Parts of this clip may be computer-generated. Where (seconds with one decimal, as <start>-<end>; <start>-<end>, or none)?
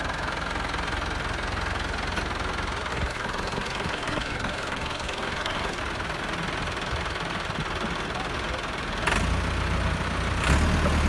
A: 2.9-5.8